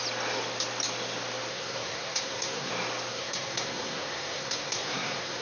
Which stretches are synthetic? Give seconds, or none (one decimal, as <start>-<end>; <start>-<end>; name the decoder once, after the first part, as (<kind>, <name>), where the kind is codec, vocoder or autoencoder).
1.5-2.7 (codec, SNAC); 3.1-5.4